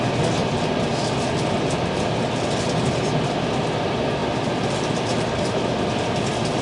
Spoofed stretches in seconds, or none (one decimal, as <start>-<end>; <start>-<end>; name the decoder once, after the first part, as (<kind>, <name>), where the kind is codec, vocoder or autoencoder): 0.4-0.9 (vocoder, BigVGAN v2); 4.2-6.6